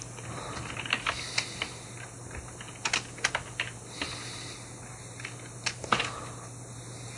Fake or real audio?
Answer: real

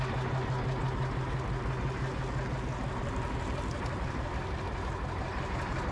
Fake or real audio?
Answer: real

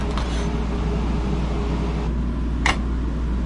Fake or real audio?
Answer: real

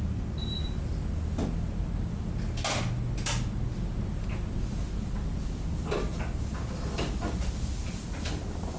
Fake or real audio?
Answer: real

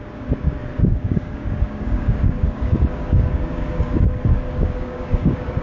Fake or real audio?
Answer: fake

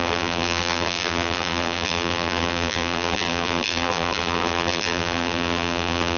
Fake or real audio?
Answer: fake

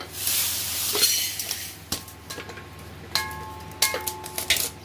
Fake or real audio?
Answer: real